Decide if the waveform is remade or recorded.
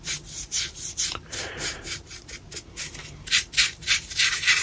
remade